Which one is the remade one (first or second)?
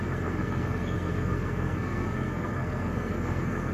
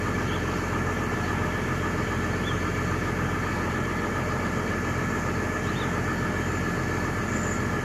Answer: first